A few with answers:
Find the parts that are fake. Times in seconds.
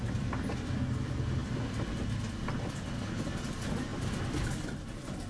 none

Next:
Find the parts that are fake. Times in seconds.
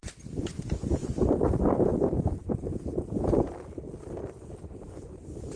1.0-1.8 (vocoder, BigVGAN v2); 2.7-3.5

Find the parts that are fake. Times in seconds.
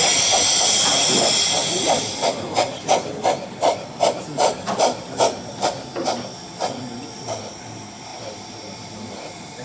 1.6-3.2 (vocoder, BigVGAN v2)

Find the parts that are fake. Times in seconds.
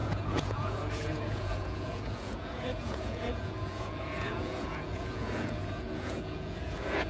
0.0-7.1 (vocoder, Vocos)